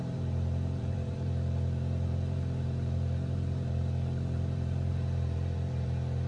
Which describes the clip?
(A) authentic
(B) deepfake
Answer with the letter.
B